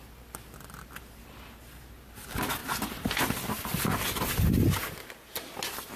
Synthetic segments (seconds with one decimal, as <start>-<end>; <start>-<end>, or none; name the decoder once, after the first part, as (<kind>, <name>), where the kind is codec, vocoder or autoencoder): none